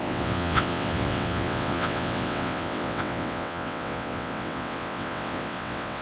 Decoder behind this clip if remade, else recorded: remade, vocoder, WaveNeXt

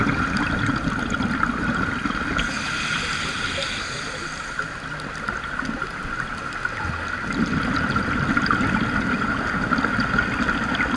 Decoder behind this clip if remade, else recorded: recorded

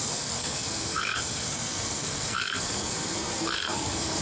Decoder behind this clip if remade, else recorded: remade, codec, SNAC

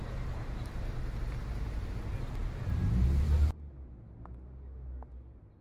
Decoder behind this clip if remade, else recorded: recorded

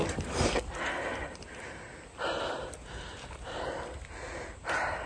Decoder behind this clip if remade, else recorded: recorded